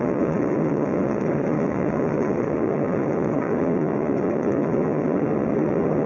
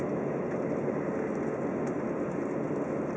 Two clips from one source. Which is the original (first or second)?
second